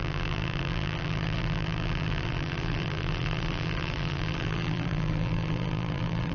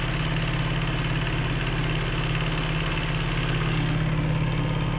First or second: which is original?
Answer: second